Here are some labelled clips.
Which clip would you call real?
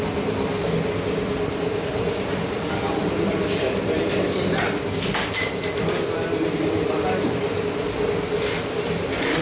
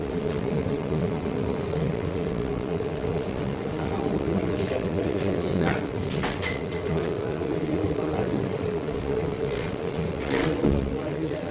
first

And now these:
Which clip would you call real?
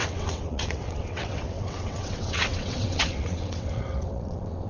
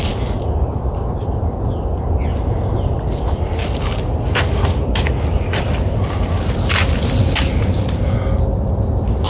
second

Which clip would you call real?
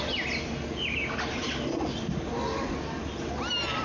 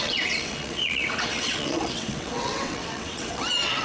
first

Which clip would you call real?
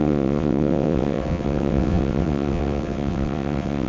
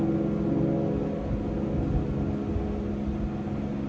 second